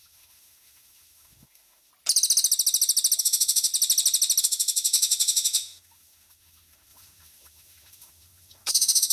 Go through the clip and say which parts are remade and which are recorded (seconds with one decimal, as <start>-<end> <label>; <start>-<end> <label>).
0.0-1.9 remade; 1.9-3.2 recorded; 3.2-3.7 remade; 3.7-4.4 recorded; 4.4-9.1 remade